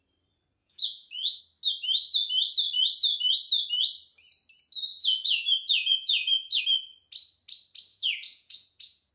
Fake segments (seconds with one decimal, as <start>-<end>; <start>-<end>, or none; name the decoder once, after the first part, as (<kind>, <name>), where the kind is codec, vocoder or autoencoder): 0.6-1.4 (vocoder, Vocos); 4.9-6.6; 7.9-9.1